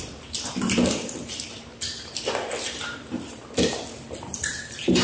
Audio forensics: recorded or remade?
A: remade